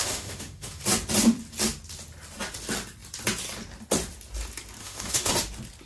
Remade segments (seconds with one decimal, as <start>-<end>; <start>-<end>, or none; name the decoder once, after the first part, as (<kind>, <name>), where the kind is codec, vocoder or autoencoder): 0.0-0.8 (autoencoder, DAC-VAE); 4.8-5.3

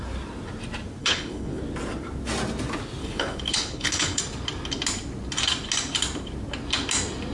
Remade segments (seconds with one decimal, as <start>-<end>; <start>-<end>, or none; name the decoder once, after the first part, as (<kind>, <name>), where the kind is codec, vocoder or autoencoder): 1.0-1.6 (codec, HILCodec); 3.0-4.2

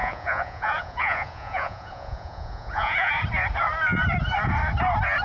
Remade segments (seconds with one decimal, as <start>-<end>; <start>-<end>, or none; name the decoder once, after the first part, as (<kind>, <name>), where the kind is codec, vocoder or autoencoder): 0.0-3.1 (vocoder, Vocos)

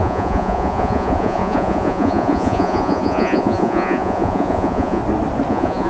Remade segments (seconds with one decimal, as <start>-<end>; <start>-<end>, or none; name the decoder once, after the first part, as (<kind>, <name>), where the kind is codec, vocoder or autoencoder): 0.0-5.0 (vocoder, Vocos); 5.5-5.9

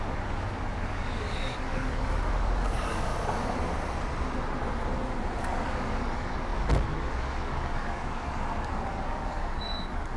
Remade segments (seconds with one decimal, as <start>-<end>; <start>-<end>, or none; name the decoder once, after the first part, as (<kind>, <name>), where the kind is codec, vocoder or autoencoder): 0.0-3.1 (codec, DAC); 5.4-10.2